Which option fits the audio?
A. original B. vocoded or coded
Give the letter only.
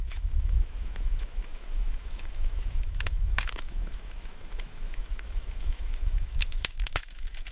B